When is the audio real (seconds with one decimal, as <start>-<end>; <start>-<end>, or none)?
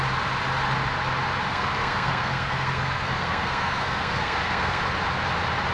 0.0-1.5; 4.8-5.7